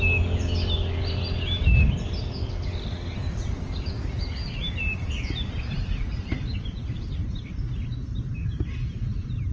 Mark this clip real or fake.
real